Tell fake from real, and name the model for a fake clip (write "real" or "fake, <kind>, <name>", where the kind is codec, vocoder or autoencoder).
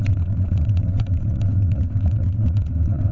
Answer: fake, vocoder, WaveNeXt